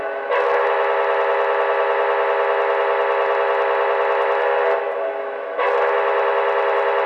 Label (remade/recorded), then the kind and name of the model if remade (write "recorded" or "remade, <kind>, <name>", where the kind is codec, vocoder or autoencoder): recorded